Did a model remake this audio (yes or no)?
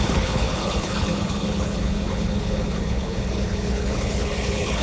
yes